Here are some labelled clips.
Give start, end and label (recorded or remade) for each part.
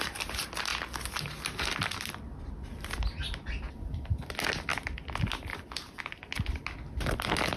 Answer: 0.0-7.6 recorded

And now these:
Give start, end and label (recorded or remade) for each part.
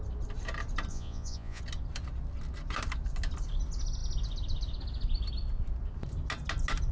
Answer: 0.0-0.9 recorded; 0.9-1.6 remade; 1.6-6.9 recorded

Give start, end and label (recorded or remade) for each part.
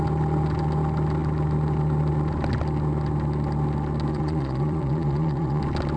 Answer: 0.0-4.1 recorded; 4.1-5.6 remade; 5.6-6.0 recorded